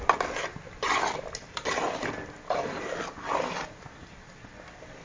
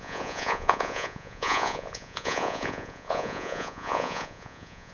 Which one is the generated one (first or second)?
second